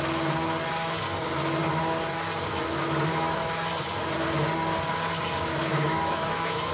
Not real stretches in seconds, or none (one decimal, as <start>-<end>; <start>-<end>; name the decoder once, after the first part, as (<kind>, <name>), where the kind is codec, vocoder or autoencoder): 5.7-6.7 (autoencoder, DAC-VAE)